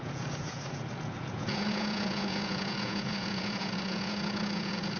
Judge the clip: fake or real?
fake